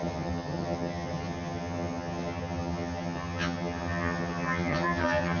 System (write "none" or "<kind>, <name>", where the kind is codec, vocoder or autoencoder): vocoder, HiFi-GAN